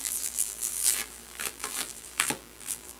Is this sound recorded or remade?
remade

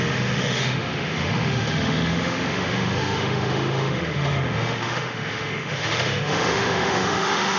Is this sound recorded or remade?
remade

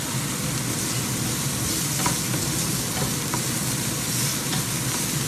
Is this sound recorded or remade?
recorded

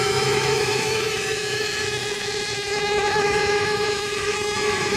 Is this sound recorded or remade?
remade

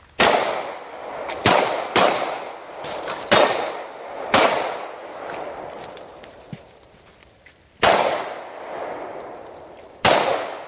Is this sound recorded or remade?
recorded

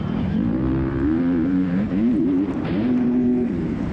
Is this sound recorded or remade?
remade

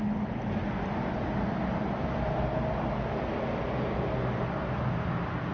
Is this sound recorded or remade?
recorded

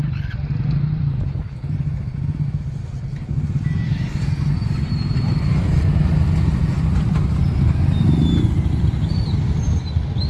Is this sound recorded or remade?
recorded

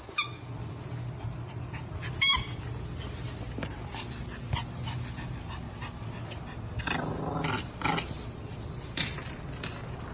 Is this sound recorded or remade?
recorded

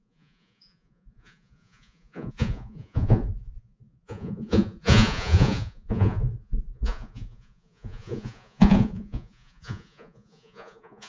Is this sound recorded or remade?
remade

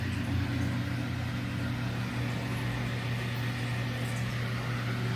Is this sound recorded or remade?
recorded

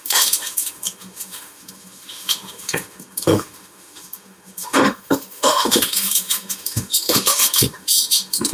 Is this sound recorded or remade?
remade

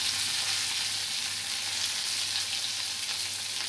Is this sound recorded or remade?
recorded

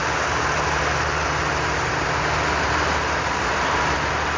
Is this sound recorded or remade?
recorded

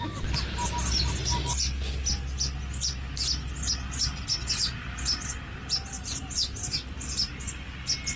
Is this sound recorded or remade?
recorded